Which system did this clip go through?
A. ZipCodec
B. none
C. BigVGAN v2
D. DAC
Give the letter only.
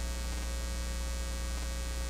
B